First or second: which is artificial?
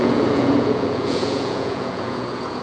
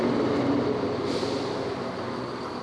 first